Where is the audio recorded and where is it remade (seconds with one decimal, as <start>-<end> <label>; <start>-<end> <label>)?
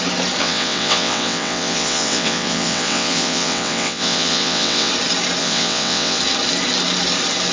0.0-0.4 recorded; 0.4-4.9 remade; 4.9-5.4 recorded; 5.4-6.2 remade; 6.2-7.5 recorded